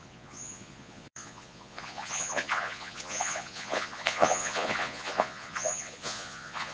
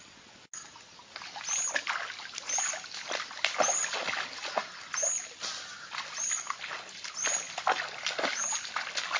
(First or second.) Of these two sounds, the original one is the second